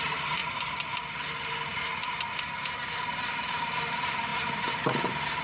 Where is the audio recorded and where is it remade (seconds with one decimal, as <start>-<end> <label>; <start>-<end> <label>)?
0.0-5.4 recorded